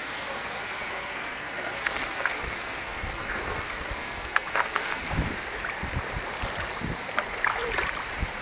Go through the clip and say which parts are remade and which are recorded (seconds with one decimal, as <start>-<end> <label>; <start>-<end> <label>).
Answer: 0.0-5.0 remade; 5.0-8.4 recorded